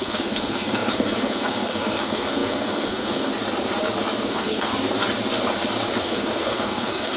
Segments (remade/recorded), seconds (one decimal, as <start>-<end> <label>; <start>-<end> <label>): 0.0-3.3 remade; 3.3-4.3 recorded; 4.3-4.7 remade; 4.7-6.0 recorded; 6.0-7.2 remade